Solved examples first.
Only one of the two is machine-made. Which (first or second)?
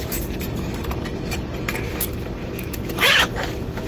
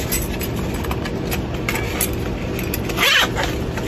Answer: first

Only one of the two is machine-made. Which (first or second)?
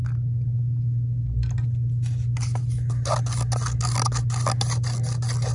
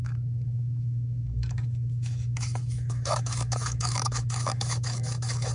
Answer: second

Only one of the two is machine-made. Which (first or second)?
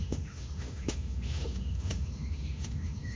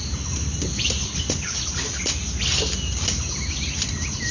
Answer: first